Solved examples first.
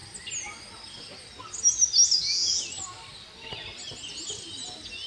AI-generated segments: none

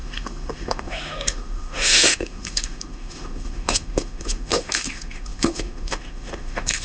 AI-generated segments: 0.0-6.8 (autoencoder, DAC-VAE)

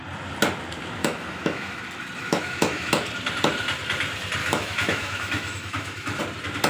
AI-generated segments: 1.0-1.8 (autoencoder, DAC-VAE); 2.2-2.9; 4.4-6.2

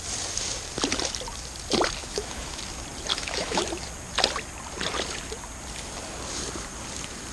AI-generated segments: 2.0-2.6 (autoencoder, DAC-VAE); 3.1-3.6

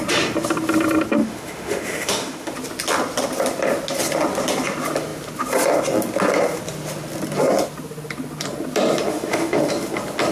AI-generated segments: 1.2-2.5 (autoencoder, DAC-VAE); 9.1-9.7

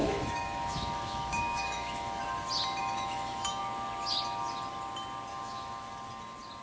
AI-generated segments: 0.0-2.2 (autoencoder, DAC-VAE); 2.8-3.6; 5.3-5.9

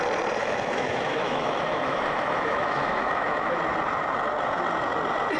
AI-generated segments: 0.4-3.6 (autoencoder, DAC-VAE)

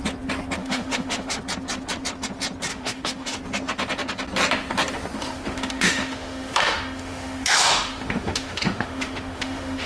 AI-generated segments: 0.6-1.4 (autoencoder, DAC-VAE); 2.7-3.4; 5.2-9.9